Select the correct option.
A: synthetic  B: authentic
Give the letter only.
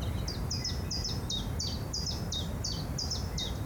B